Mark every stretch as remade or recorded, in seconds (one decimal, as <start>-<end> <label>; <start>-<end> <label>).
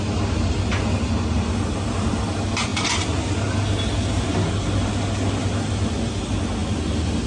0.0-7.3 recorded